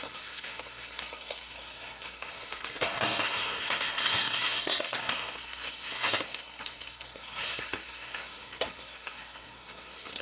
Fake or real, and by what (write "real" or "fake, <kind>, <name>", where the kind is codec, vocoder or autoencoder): fake, codec, SNAC